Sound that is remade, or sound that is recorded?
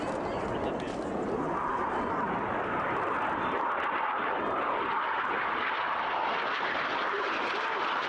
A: recorded